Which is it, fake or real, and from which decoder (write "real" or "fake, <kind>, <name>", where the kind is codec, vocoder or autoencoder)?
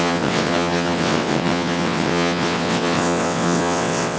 fake, vocoder, WaveNeXt